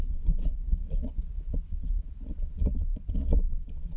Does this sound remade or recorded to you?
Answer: remade